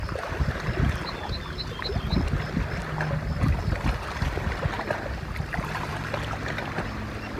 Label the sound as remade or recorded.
recorded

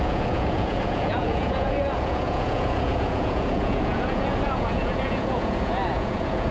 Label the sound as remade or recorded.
remade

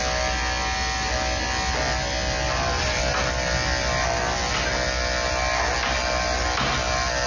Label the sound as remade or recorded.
recorded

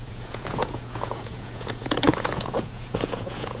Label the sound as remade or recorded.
remade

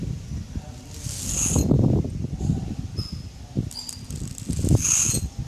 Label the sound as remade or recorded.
recorded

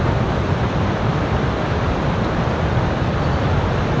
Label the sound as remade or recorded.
recorded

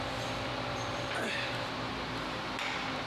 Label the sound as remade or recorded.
remade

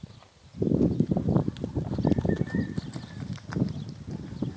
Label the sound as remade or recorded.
recorded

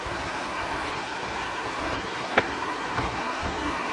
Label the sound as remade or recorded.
remade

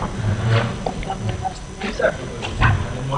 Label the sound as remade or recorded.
recorded